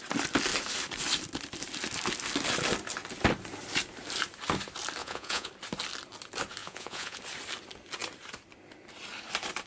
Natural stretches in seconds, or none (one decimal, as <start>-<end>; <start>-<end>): 0.0-5.0; 5.5-6.6; 7.2-9.7

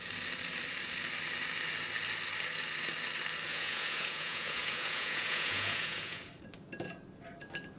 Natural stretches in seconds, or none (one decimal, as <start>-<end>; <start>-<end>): 0.0-3.5; 6.3-7.8